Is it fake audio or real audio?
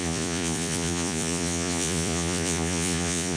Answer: fake